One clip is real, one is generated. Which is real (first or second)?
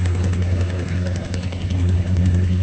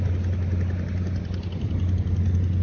second